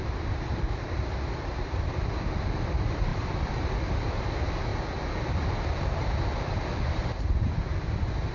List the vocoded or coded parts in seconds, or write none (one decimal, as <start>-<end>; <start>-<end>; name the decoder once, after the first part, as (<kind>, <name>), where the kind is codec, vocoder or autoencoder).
0.0-4.7 (vocoder, BigVGAN v2); 7.0-8.3